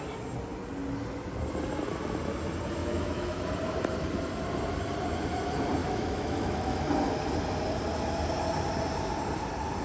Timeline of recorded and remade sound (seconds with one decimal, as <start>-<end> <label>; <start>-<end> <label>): 0.0-2.8 recorded; 2.8-3.4 remade; 3.4-5.8 recorded; 5.8-6.8 remade; 6.8-9.8 recorded